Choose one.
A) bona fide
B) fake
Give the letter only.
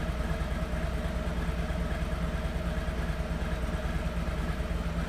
A